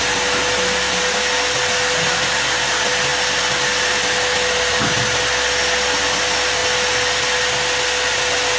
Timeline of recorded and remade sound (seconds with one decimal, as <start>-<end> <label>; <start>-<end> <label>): 0.0-8.6 recorded